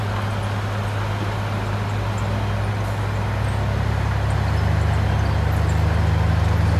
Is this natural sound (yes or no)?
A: yes